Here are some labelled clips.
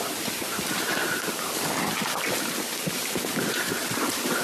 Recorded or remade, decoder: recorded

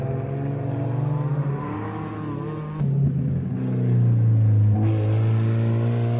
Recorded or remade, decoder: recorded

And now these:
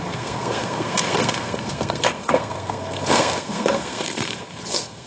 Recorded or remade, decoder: remade, codec, SNAC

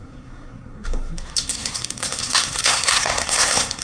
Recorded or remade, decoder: remade, codec, SNAC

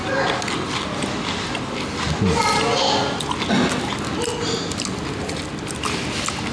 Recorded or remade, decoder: recorded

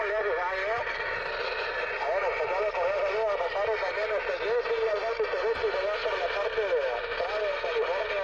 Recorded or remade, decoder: recorded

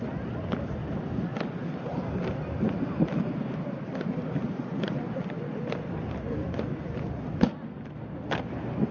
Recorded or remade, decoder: recorded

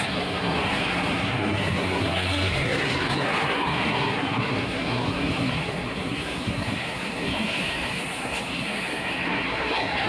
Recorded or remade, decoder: remade, codec, SNAC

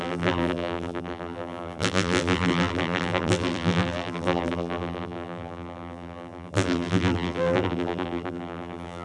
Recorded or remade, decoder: remade, vocoder, BigVGAN v2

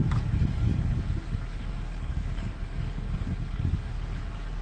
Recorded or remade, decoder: remade, codec, DAC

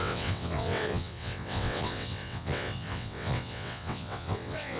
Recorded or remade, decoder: remade, vocoder, WaveNeXt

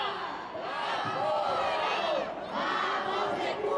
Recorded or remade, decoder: recorded